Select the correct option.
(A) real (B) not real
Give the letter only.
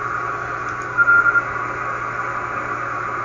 A